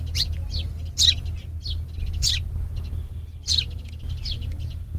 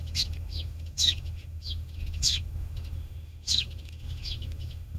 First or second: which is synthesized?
second